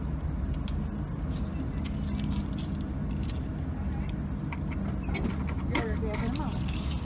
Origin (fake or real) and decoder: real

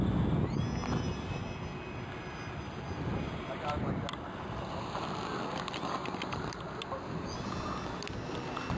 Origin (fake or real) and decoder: real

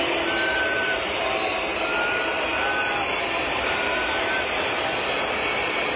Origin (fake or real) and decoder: real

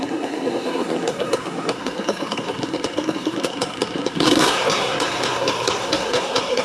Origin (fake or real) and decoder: fake, codec, SNAC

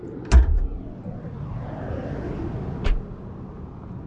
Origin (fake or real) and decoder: real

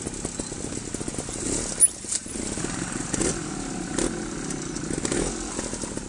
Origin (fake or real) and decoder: real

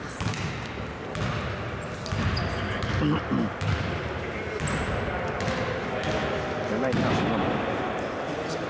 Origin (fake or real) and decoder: real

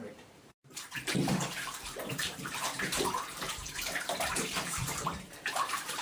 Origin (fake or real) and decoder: fake, vocoder, BigVGAN v2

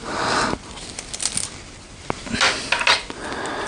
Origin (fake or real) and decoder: real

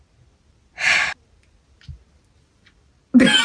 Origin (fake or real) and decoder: real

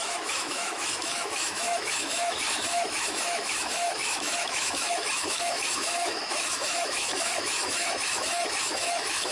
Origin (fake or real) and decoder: fake, autoencoder, DAC-VAE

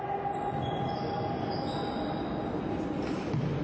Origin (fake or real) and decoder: real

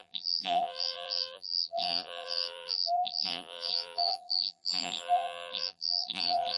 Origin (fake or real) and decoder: fake, vocoder, BigVGAN v2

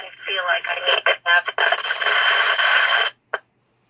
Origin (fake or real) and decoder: real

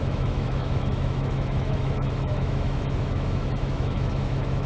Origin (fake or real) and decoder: fake, autoencoder, DAC-VAE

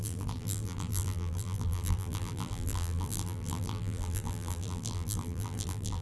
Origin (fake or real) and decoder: fake, vocoder, BigVGAN v2